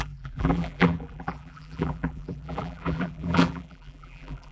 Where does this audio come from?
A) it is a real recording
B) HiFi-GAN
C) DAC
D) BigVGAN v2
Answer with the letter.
D